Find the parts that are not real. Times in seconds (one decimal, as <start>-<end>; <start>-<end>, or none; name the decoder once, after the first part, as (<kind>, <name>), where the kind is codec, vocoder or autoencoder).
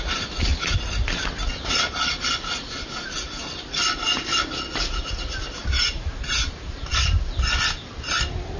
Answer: 5.6-6.9 (vocoder, BigVGAN v2)